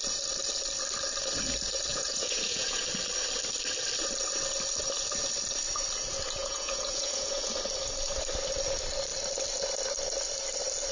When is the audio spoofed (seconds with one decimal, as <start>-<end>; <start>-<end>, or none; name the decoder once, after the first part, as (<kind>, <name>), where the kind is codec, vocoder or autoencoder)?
1.9-2.8 (vocoder, Vocos); 6.4-7.5